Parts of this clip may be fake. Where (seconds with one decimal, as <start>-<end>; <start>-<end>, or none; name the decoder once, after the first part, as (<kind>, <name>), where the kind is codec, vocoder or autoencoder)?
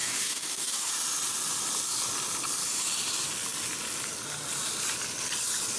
0.0-0.9 (codec, DAC)